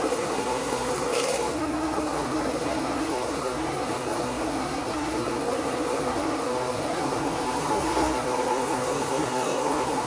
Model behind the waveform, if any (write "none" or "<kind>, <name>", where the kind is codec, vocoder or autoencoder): codec, SNAC